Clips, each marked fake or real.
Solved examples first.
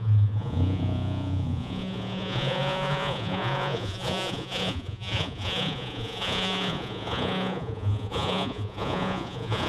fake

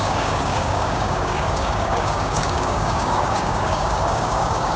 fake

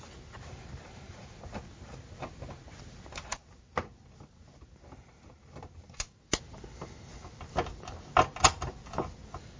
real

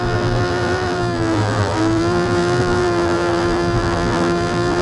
fake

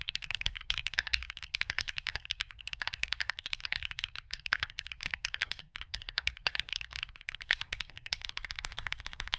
fake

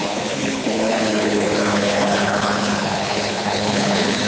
fake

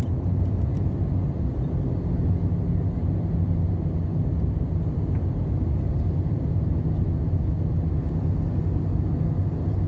real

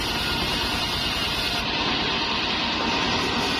real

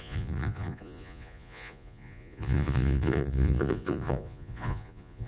fake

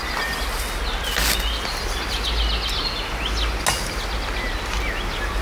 real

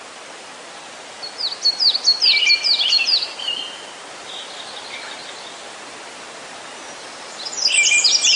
real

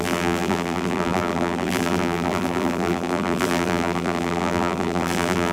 fake